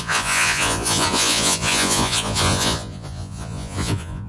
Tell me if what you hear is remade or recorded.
remade